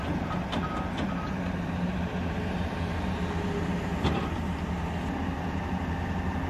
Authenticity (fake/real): real